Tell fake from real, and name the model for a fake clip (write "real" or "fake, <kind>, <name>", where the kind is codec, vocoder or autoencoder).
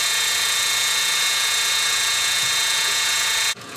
fake, vocoder, Vocos